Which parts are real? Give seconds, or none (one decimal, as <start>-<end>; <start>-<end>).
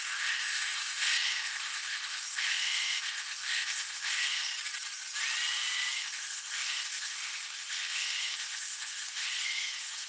4.5-5.9